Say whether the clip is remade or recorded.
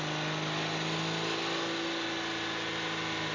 recorded